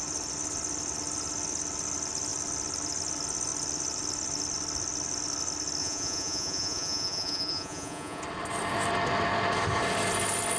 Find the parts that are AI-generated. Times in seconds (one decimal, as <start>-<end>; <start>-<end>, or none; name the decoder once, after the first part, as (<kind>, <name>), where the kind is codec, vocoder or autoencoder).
5.8-8.2 (vocoder, Vocos)